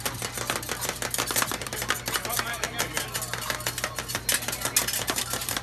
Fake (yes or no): no